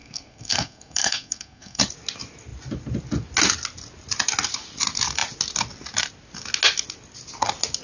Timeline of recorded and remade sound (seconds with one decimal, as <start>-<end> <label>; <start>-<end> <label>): 0.0-1.8 remade; 1.8-7.8 recorded